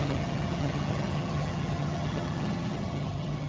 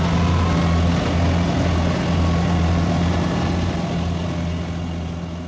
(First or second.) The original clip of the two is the second